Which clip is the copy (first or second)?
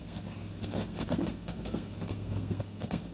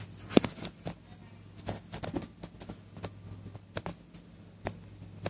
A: first